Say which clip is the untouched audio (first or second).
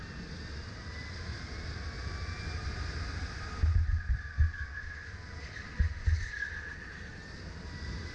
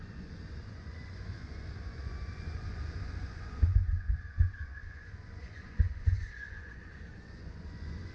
first